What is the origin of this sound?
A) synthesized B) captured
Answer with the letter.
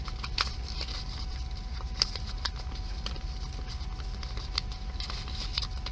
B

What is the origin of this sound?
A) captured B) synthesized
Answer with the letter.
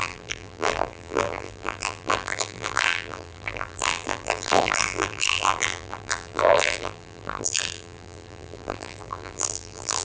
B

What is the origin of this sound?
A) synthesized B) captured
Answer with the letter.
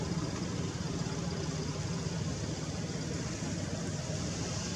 B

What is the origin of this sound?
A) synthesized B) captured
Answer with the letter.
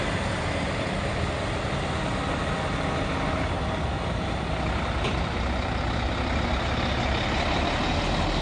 B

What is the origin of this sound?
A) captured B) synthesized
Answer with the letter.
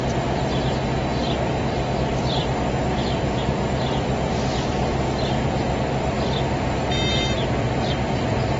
A